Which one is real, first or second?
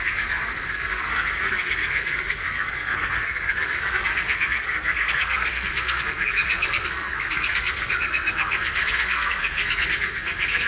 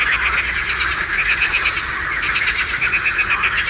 second